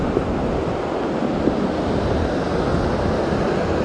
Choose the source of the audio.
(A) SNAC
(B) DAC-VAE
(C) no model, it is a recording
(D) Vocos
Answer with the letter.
C